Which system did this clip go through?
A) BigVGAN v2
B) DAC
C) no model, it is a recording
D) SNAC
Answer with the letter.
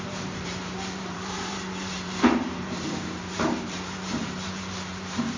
A